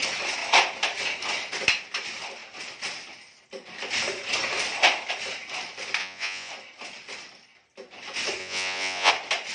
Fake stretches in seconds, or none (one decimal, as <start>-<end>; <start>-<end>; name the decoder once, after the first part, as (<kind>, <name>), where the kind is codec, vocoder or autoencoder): 6.0-6.5 (vocoder, Vocos); 8.4-9.1